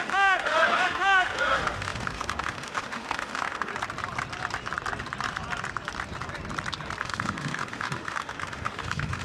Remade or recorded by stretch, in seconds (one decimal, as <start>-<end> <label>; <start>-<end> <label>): 0.0-3.7 remade; 3.7-7.0 recorded; 7.0-9.2 remade